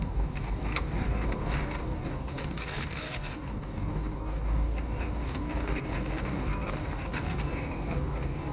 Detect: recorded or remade remade